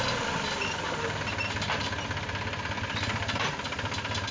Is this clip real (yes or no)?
yes